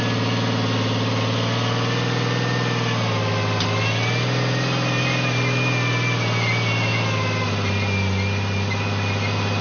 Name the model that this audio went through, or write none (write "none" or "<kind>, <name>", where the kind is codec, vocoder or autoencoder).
none